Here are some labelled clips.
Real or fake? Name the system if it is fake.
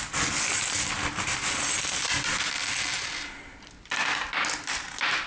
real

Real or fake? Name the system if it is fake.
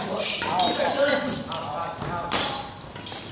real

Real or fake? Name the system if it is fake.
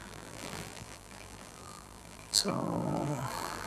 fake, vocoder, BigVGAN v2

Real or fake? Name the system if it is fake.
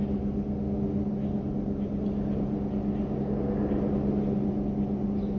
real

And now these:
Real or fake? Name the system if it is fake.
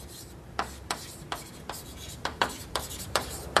fake, vocoder, BigVGAN v2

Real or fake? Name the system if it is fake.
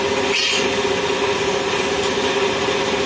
real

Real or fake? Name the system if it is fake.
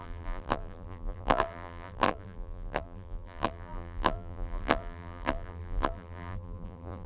fake, vocoder, BigVGAN v2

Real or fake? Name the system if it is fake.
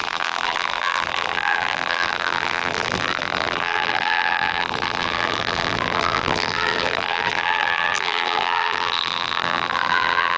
fake, vocoder, BigVGAN v2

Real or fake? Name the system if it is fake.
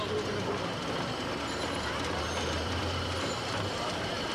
fake, vocoder, BigVGAN v2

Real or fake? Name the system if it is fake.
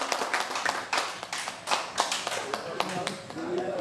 fake, vocoder, BigVGAN v2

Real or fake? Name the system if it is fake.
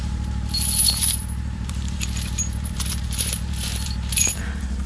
fake, vocoder, BigVGAN v2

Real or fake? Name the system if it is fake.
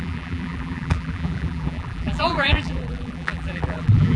fake, vocoder, BigVGAN v2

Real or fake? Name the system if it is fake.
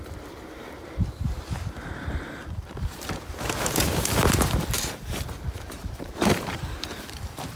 fake, vocoder, BigVGAN v2